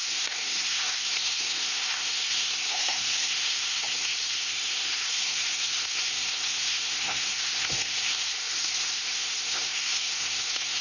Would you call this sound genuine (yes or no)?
no